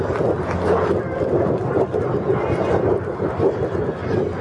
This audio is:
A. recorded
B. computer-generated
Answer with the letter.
A